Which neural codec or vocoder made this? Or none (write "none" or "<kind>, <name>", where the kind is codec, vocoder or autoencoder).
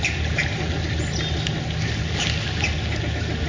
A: none